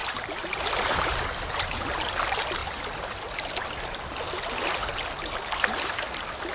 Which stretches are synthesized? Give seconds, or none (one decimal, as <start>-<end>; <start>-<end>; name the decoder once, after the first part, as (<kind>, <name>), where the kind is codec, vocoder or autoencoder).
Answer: 0.0-2.2 (vocoder, BigVGAN v2)